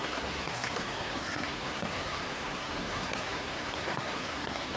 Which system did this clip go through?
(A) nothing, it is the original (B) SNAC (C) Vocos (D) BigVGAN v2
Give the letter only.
B